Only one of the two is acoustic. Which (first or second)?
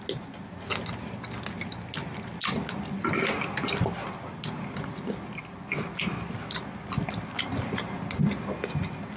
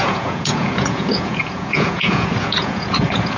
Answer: first